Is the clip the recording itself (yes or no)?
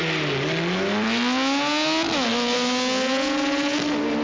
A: yes